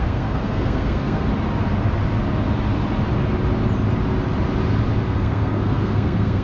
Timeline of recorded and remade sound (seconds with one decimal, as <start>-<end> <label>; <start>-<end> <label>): 0.0-1.3 remade; 1.3-5.1 recorded; 5.1-6.4 remade